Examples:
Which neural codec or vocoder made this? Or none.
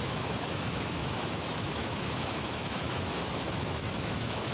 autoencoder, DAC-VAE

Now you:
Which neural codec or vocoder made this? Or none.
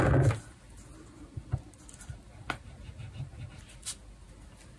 none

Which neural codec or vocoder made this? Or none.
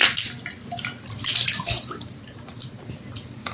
none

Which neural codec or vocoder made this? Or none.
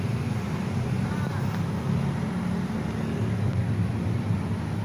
none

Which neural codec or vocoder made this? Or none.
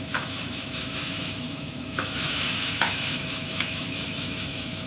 autoencoder, DAC-VAE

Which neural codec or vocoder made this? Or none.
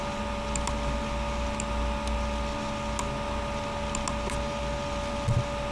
none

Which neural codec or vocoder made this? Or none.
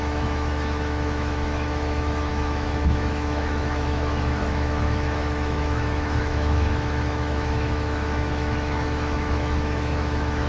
autoencoder, DAC-VAE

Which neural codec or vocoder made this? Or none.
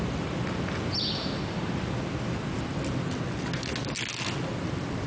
none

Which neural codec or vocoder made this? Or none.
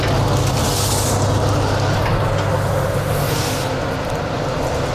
none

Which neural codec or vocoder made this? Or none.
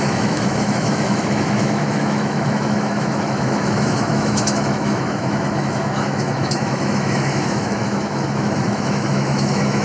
autoencoder, DAC-VAE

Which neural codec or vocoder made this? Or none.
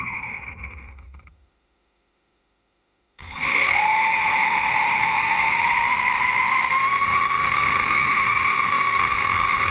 autoencoder, DAC-VAE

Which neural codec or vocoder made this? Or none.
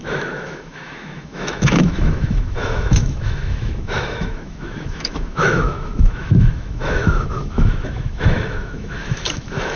autoencoder, DAC-VAE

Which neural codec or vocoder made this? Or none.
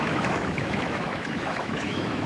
autoencoder, DAC-VAE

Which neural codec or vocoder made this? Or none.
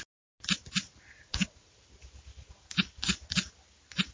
none